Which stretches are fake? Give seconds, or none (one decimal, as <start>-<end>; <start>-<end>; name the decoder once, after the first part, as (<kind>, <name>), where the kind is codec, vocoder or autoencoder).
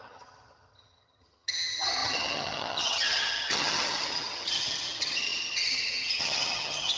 0.0-7.0 (vocoder, HiFi-GAN)